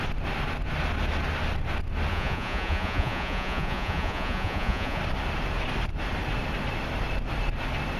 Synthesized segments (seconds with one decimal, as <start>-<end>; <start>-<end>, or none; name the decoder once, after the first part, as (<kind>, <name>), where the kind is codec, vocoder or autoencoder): 2.1-5.0 (vocoder, Vocos)